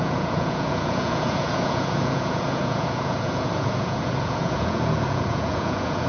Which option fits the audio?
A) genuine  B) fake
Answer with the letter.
B